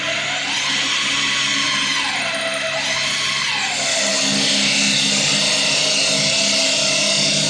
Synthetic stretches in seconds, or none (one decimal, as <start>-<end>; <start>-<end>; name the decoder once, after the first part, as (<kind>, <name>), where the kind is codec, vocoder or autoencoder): none